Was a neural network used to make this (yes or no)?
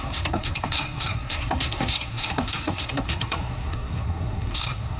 yes